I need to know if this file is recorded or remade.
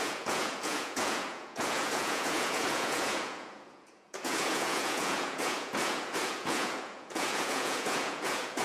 remade